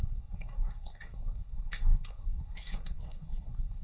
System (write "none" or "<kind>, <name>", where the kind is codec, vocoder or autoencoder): codec, SNAC